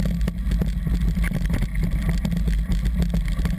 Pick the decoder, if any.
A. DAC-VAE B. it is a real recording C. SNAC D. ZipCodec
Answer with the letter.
B